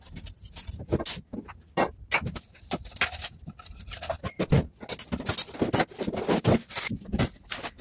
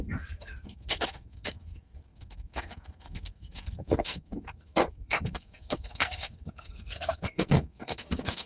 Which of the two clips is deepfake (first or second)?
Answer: second